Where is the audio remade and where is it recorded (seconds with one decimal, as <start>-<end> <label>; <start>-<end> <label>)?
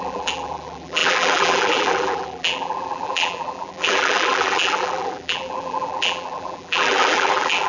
0.0-7.7 remade